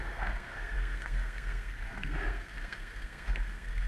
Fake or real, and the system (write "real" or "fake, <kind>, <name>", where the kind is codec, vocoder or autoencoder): fake, codec, SNAC